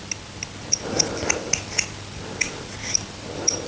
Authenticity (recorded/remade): recorded